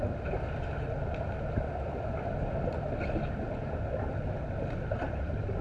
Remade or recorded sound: recorded